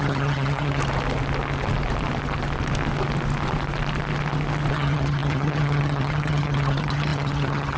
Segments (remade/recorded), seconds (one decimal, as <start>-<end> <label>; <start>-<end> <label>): 0.0-0.8 remade; 0.8-4.7 recorded; 4.7-7.8 remade